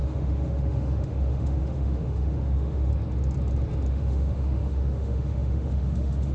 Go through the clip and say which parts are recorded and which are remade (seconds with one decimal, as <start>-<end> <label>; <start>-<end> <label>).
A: 0.0-2.9 remade; 2.9-3.9 recorded; 3.9-6.3 remade